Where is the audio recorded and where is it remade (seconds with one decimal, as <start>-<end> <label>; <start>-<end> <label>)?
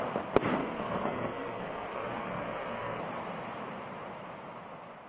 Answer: 0.0-0.6 recorded; 0.6-3.0 remade; 3.0-5.1 recorded